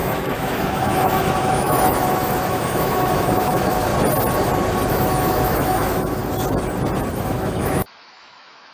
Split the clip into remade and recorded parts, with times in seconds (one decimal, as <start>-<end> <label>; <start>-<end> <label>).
0.0-3.9 remade; 3.9-4.9 recorded; 4.9-6.2 remade; 6.2-7.2 recorded; 7.2-8.7 remade